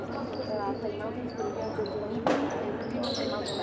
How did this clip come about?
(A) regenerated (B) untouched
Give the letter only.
B